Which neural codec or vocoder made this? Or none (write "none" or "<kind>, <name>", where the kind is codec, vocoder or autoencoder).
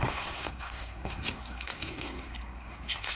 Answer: codec, SNAC